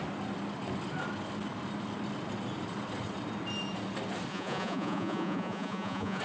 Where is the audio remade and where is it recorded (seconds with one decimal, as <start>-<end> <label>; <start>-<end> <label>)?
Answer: 0.0-4.3 recorded; 4.3-6.2 remade